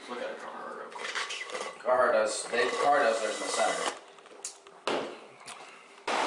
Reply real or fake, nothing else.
real